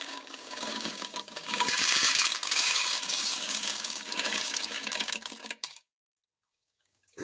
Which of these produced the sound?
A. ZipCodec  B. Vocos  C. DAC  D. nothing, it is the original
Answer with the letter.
C